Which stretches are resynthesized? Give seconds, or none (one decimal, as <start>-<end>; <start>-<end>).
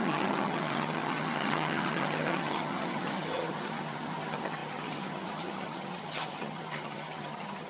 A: 0.0-7.7